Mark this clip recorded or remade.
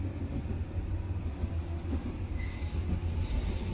recorded